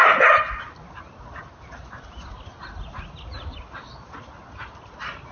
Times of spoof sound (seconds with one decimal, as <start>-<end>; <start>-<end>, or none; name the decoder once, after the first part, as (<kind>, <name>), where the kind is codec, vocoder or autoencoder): none